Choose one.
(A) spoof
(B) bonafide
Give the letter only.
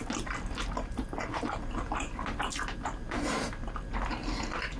B